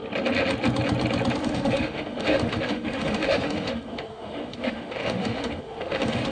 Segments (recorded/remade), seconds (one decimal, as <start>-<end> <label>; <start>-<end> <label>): 0.0-1.4 recorded; 1.4-6.3 remade